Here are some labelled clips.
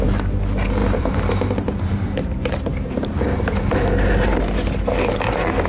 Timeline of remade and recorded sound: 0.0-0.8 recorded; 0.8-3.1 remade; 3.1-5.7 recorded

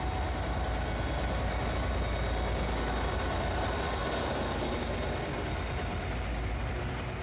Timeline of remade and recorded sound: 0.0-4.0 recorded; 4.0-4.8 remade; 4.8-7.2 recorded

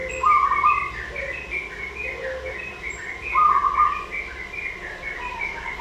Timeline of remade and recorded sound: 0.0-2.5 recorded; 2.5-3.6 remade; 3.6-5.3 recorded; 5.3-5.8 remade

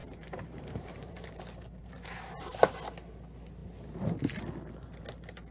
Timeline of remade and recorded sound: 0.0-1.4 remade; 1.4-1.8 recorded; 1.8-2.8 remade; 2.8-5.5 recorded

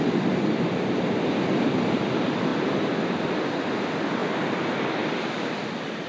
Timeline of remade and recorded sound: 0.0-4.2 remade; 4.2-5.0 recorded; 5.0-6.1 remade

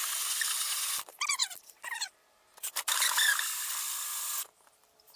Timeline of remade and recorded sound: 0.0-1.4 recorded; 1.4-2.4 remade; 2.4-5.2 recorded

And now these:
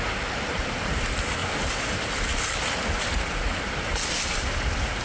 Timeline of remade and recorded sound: 0.0-5.0 recorded

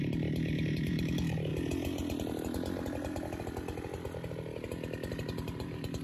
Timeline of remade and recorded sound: 0.0-1.5 remade; 1.5-5.1 recorded; 5.1-6.0 remade